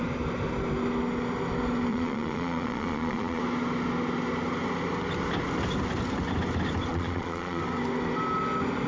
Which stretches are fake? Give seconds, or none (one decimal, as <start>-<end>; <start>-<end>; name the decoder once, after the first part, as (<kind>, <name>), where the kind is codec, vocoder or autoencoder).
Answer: 1.9-3.4 (vocoder, Vocos); 6.9-7.6